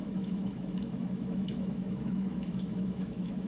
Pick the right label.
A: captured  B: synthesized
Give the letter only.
B